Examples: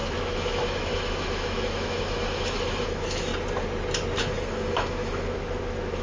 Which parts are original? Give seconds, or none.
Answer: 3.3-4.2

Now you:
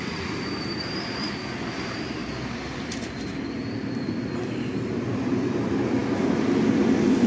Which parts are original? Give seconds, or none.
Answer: 2.2-5.4; 6.0-6.8

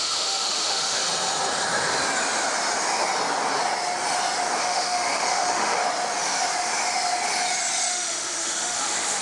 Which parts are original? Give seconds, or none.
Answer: 1.0-4.6; 5.8-7.9

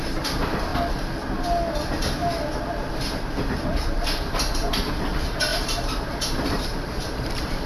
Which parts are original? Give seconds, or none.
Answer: 0.7-2.6

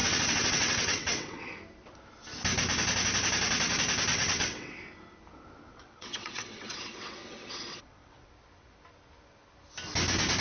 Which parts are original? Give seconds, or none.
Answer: 1.5-4.1; 4.8-5.7; 8.3-10.4

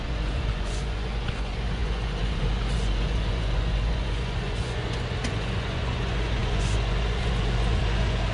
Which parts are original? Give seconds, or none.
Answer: none

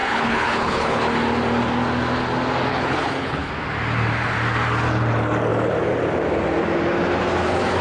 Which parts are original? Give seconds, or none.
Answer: 1.1-2.7; 3.5-7.8